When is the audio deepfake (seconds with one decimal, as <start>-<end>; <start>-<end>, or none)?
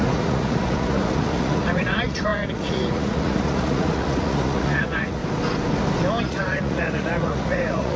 0.0-5.2; 6.2-8.0